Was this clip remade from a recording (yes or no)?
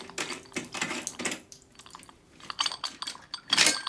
no